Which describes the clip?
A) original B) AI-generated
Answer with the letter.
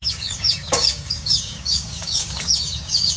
B